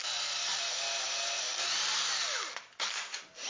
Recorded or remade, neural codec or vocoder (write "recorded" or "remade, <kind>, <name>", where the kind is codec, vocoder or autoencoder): remade, vocoder, BigVGAN v2